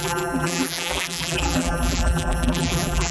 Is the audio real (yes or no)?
no